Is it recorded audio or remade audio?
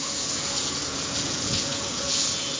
remade